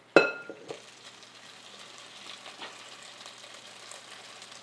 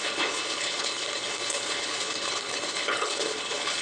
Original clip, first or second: first